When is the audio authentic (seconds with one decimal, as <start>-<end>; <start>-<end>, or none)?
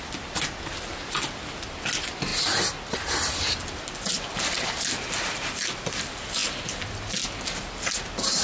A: 0.0-8.4